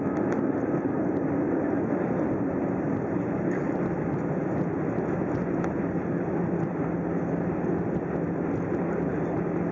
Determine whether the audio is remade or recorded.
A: recorded